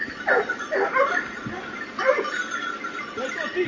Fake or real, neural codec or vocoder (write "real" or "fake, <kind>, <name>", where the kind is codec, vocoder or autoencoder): real